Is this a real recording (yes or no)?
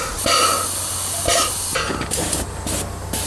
yes